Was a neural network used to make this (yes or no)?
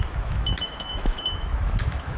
yes